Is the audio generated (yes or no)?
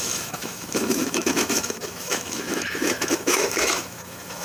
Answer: yes